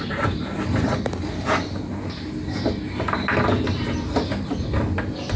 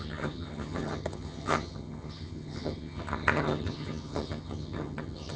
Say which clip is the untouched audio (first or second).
first